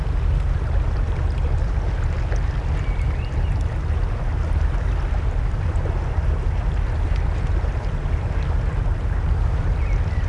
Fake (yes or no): no